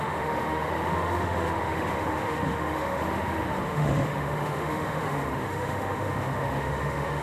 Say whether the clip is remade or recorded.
remade